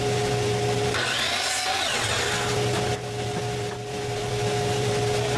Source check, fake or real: real